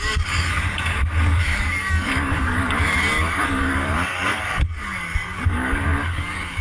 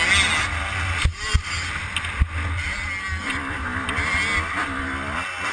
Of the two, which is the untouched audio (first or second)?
second